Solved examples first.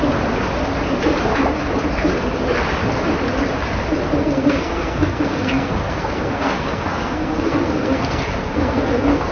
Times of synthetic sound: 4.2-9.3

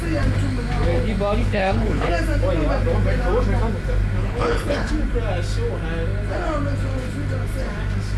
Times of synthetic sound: 1.4-2.1; 4.2-4.9

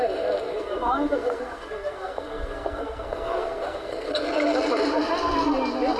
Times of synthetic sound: 0.5-4.1

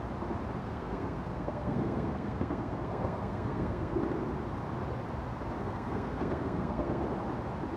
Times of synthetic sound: 0.6-4.0; 5.6-7.0

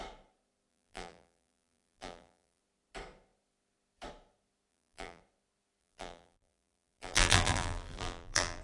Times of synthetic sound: 0.7-2.6; 4.7-5.2; 5.8-8.6